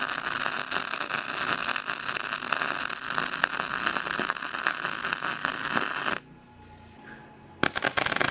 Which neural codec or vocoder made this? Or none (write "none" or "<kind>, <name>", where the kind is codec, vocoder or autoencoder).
none